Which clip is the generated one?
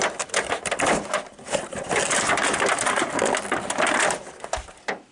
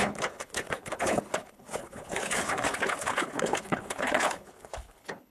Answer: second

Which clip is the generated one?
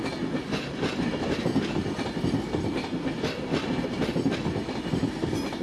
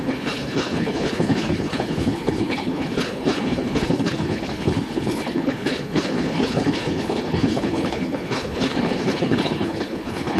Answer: second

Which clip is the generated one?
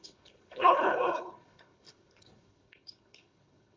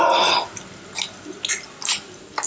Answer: first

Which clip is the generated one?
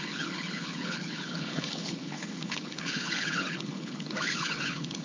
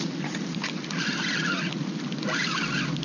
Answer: first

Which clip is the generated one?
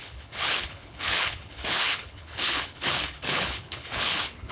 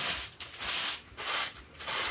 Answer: first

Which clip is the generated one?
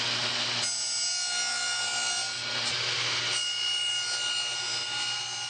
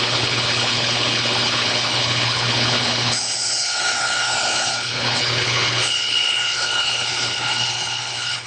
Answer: second